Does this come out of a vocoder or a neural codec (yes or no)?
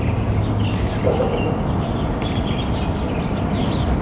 no